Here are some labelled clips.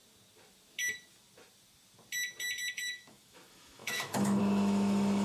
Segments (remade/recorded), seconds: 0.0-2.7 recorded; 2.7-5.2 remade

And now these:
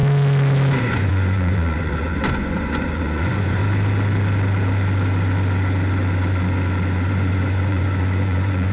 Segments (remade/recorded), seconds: 0.0-0.8 recorded; 0.8-3.6 remade; 3.6-7.1 recorded; 7.1-8.7 remade

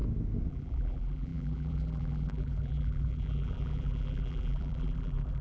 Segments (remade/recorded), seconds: 0.0-0.5 recorded; 0.5-5.4 remade

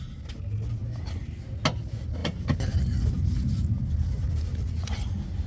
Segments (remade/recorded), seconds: 0.0-4.5 recorded; 4.5-5.1 remade; 5.1-5.5 recorded

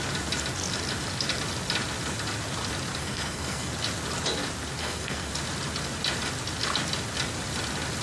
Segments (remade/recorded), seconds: 0.0-3.0 recorded; 3.0-3.7 remade; 3.7-4.8 recorded; 4.8-5.3 remade; 5.3-8.0 recorded

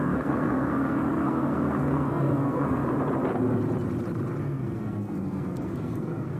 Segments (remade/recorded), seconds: 0.0-2.8 remade; 2.8-4.4 recorded; 4.4-6.4 remade

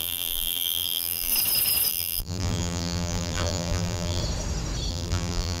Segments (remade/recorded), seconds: 0.0-1.3 remade; 1.3-1.9 recorded; 1.9-4.2 remade; 4.2-4.9 recorded; 4.9-5.6 remade